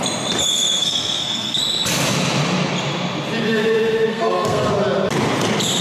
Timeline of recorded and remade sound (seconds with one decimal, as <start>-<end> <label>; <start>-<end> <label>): 0.0-0.4 recorded; 0.4-1.6 remade; 1.6-4.1 recorded; 4.1-4.7 remade; 4.7-5.8 recorded